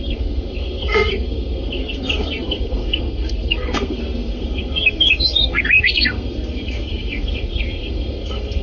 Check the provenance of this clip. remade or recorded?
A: remade